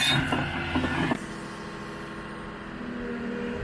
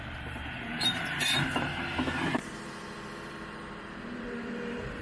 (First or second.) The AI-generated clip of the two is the second